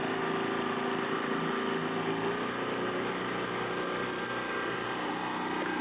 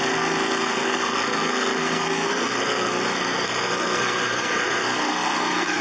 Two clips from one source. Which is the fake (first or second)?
second